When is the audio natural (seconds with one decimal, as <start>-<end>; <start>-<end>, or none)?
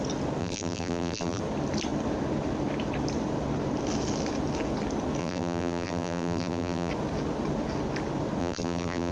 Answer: 0.0-0.4; 1.4-5.2; 6.9-8.4